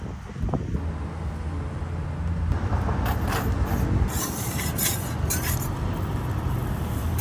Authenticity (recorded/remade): recorded